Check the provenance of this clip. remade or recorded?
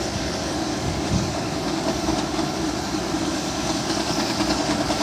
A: remade